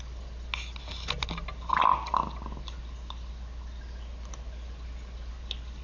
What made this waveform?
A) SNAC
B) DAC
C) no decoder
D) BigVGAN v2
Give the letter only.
C